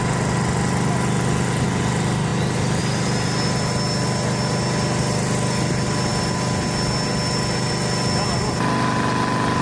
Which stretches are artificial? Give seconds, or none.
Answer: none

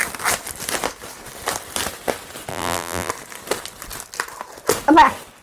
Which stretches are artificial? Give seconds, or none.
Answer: 2.5-3.1 (vocoder, BigVGAN v2)